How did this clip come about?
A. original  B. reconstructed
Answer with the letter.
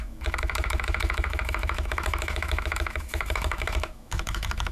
B